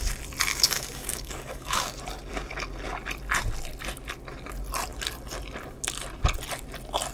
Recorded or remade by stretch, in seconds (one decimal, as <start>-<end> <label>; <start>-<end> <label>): 0.0-0.5 recorded; 0.5-2.0 remade; 2.0-7.1 recorded